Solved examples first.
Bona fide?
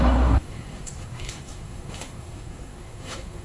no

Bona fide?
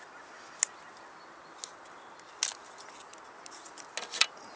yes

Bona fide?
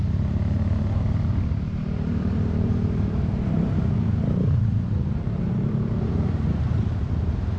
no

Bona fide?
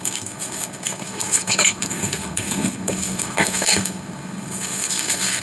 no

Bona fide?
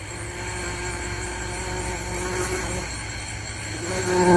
yes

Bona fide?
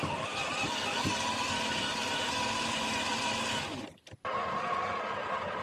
yes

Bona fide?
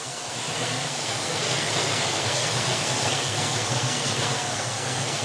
no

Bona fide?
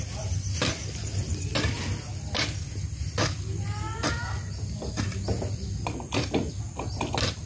yes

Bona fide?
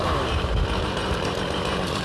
no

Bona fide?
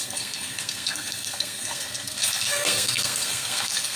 no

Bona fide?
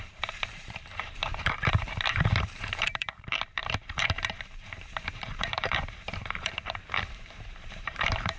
no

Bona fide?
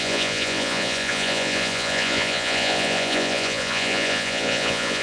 no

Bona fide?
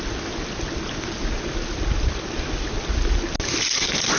yes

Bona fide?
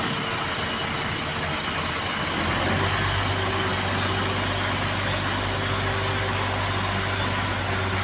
yes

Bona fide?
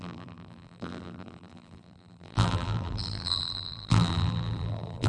no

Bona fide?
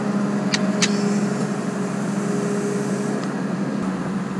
yes